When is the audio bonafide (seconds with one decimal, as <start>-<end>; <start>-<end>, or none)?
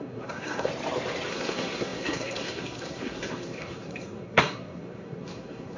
0.7-1.3